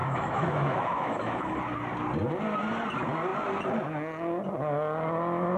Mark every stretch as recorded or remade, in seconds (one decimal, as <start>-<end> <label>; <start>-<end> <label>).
0.0-1.5 remade; 1.5-5.6 recorded